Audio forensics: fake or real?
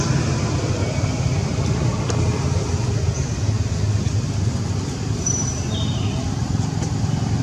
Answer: fake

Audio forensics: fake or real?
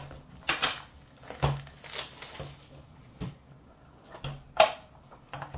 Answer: real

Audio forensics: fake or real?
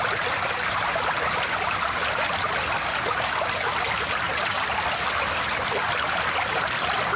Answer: real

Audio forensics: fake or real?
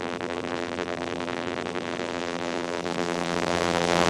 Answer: fake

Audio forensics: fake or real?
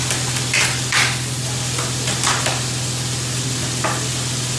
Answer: real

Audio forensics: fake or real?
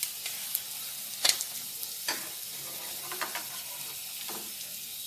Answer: real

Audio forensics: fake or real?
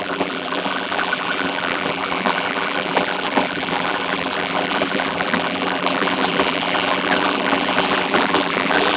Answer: fake